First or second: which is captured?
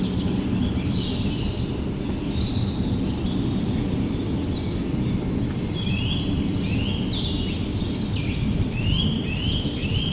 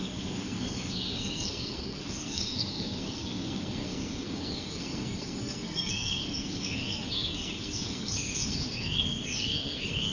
first